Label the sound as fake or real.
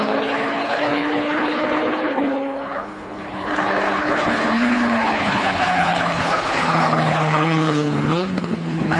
fake